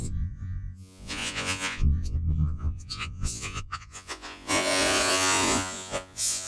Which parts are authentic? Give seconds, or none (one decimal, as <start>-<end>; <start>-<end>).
none